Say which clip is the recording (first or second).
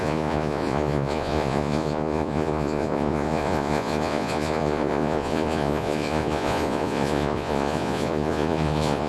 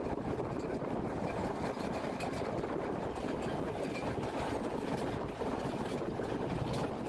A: second